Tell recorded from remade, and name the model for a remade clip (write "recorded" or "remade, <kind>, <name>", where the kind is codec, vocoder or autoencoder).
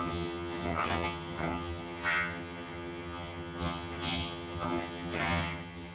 remade, vocoder, HiFi-GAN